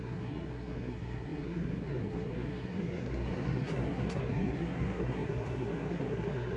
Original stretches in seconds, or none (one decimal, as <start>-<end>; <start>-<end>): none